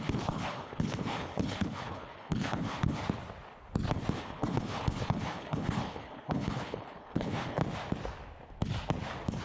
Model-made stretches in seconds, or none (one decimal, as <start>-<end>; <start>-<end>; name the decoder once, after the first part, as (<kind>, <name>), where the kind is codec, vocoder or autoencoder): 0.0-3.0 (codec, HILCodec); 4.1-7.6